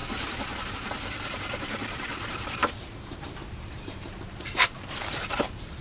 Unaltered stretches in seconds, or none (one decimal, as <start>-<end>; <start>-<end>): 0.0-0.7; 2.6-3.7